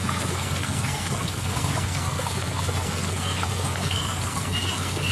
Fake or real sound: fake